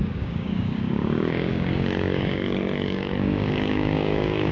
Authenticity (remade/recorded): remade